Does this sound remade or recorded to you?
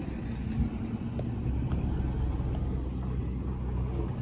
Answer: recorded